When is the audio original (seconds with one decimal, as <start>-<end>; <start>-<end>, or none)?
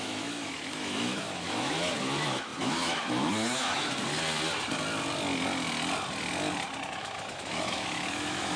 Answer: 4.0-7.0